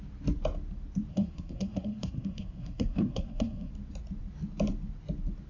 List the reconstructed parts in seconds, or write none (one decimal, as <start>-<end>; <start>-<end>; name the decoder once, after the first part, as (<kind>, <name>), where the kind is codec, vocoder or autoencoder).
1.1-3.7 (codec, SNAC)